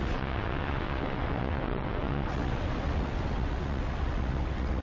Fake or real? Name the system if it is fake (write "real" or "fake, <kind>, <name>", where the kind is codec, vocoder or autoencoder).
fake, vocoder, WaveNeXt